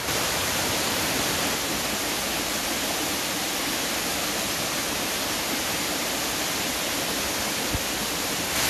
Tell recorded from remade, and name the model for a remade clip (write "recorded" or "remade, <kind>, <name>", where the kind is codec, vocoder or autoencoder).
recorded